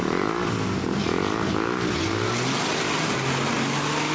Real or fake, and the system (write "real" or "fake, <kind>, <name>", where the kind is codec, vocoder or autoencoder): real